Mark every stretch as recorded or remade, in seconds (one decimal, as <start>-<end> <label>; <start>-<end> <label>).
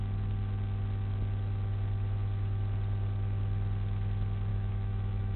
0.0-4.5 recorded; 4.5-5.4 remade